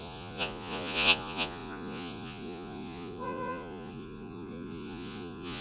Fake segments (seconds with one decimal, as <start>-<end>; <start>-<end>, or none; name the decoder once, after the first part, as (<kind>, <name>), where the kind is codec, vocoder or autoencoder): 0.0-5.6 (vocoder, Vocos)